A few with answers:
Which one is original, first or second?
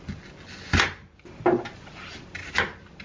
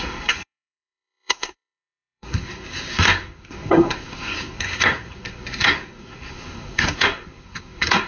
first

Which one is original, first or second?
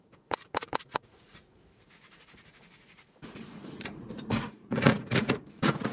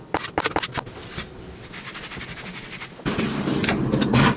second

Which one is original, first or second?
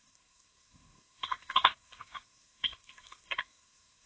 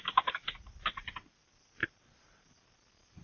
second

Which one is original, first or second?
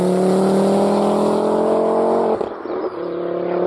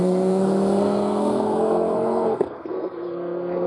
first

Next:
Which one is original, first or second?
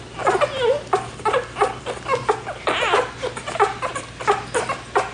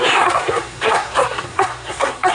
first